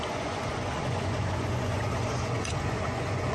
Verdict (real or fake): fake